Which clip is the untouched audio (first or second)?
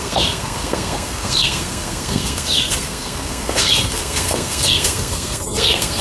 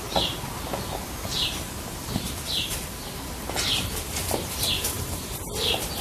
second